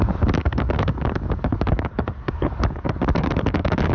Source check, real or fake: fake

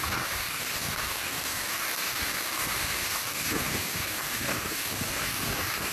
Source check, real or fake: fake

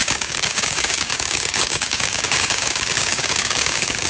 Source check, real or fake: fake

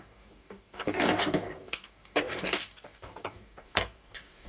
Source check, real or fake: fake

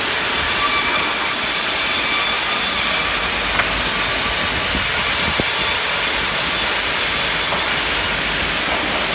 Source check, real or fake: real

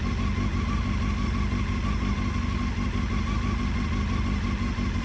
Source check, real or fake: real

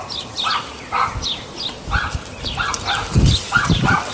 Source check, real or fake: real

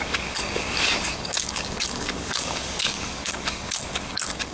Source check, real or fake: fake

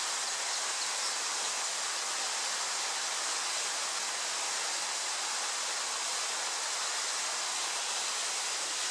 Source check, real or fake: real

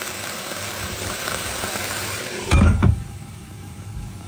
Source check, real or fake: fake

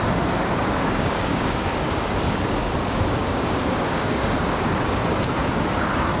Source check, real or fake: fake